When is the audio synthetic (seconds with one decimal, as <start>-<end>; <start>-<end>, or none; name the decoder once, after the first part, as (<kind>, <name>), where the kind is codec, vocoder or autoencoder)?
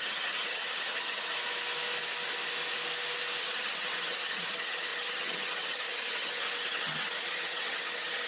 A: 0.0-1.3 (vocoder, HiFi-GAN); 3.4-8.3